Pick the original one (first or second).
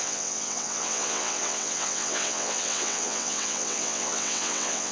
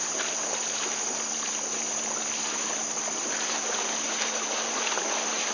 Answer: second